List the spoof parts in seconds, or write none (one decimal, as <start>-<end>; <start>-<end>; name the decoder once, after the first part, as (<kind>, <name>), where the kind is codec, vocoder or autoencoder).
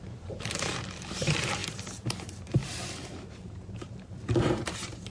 0.0-2.6 (vocoder, BigVGAN v2); 3.4-5.1